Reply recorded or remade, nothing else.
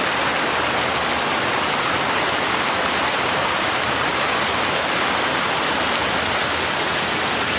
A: recorded